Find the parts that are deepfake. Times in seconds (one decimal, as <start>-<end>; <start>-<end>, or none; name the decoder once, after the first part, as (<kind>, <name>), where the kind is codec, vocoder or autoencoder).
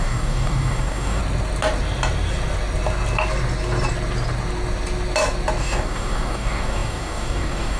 0.0-1.2 (codec, DAC); 5.6-7.8